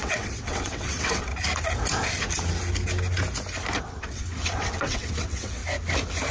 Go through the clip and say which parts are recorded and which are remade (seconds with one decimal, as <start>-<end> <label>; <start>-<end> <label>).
0.0-1.3 remade; 1.3-3.8 recorded; 3.8-5.6 remade; 5.6-6.3 recorded